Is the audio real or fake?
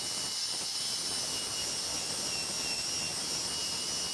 real